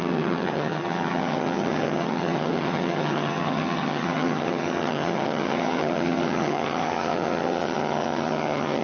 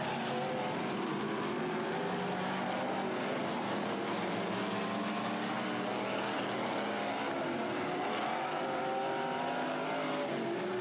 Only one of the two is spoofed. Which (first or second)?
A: first